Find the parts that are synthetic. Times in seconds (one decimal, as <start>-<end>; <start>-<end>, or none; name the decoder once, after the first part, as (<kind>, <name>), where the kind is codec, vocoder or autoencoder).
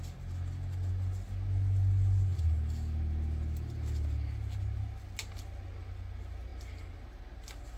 none